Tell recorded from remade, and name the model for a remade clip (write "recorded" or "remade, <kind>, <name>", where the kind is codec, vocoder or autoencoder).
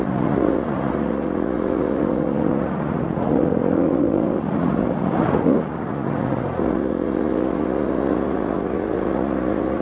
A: remade, vocoder, Vocos